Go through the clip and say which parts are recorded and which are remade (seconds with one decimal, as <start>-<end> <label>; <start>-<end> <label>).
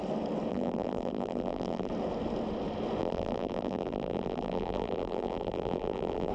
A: 0.0-0.5 recorded; 0.5-1.9 remade; 1.9-3.0 recorded; 3.0-6.3 remade